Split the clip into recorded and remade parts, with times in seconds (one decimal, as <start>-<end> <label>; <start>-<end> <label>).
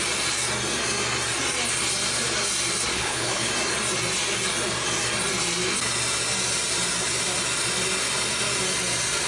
0.0-2.9 recorded; 2.9-3.5 remade; 3.5-9.3 recorded